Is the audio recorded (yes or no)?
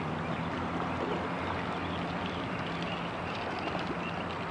yes